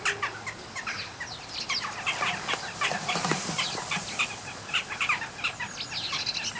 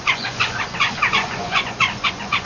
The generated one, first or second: second